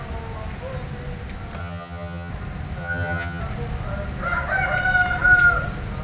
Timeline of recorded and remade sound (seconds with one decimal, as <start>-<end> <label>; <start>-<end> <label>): 0.0-1.6 recorded; 1.6-2.3 remade; 2.3-2.8 recorded; 2.8-3.4 remade; 3.4-6.0 recorded